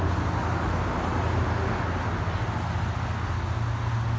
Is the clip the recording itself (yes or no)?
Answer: yes